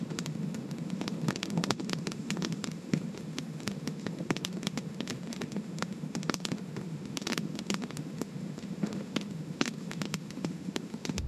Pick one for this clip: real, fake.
fake